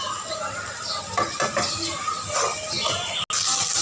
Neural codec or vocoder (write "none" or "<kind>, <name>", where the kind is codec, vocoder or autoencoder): none